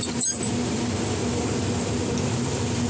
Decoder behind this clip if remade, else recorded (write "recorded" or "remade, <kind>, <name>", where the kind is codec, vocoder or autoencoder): recorded